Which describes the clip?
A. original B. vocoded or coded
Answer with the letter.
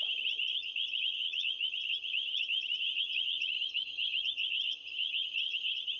B